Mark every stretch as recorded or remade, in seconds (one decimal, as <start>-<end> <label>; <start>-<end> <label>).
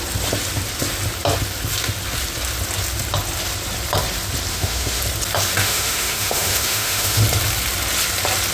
0.0-4.5 recorded; 4.5-5.0 remade; 5.0-5.6 recorded; 5.6-7.2 remade; 7.2-8.5 recorded